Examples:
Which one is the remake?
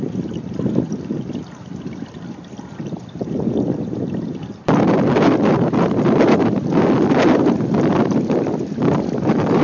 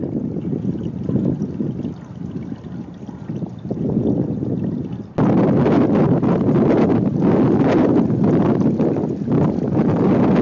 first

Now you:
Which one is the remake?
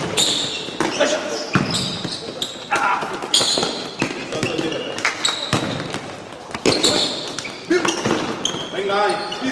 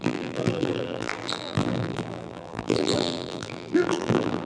second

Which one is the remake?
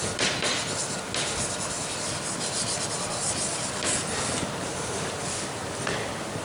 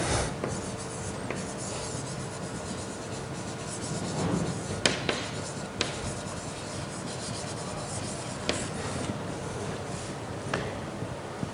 first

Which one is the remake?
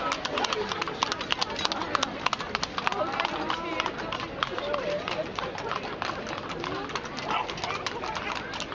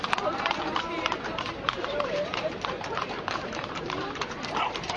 second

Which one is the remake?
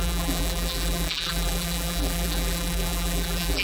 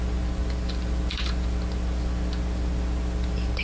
first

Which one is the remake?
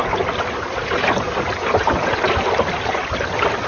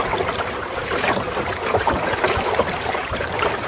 second